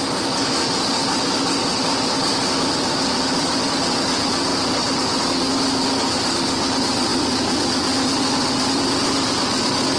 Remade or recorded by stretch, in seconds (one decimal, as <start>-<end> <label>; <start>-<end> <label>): 0.0-10.0 recorded